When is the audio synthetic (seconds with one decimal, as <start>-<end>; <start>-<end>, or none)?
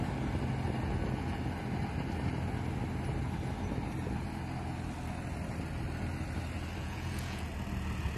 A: 6.8-7.5